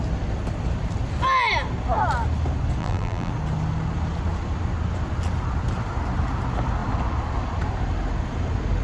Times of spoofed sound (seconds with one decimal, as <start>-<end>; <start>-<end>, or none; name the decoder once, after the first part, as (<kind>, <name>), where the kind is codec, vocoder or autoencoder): 2.8-3.3 (vocoder, BigVGAN v2)